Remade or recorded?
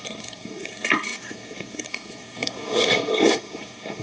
remade